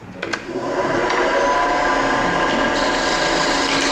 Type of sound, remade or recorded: recorded